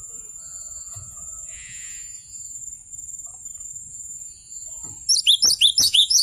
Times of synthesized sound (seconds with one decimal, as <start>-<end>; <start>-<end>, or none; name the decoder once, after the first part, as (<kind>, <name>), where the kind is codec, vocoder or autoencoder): 0.0-2.6 (vocoder, Vocos); 3.9-4.8; 5.8-6.2

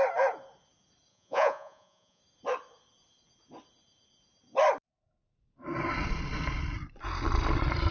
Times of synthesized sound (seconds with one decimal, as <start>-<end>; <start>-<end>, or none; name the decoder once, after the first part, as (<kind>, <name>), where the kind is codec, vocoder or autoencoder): 1.1-2.2 (vocoder, Vocos)